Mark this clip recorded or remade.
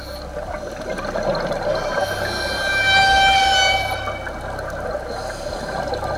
recorded